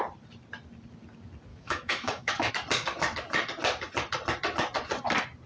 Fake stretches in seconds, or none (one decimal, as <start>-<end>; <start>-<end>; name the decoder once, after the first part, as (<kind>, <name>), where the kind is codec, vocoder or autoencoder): 1.5-2.5 (autoencoder, DAC-VAE)

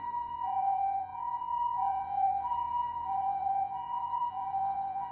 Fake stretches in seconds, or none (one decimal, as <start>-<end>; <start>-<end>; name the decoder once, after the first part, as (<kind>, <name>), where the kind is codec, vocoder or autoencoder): 0.0-5.1 (vocoder, Vocos)